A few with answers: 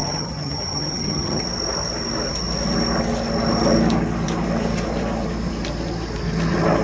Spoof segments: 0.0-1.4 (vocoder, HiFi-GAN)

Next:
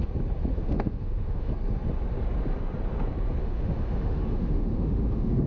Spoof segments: 0.5-1.5 (autoencoder, DAC-VAE); 3.4-5.5

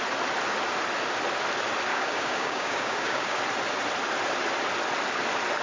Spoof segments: 1.9-3.4 (codec, DAC)